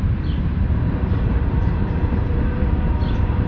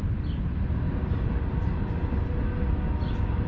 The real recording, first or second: second